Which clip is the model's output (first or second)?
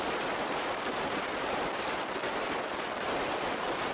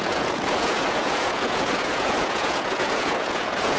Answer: second